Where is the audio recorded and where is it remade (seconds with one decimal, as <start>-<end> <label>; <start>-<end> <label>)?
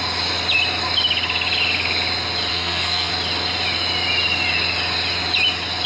0.0-2.5 recorded; 2.5-3.1 remade; 3.1-5.9 recorded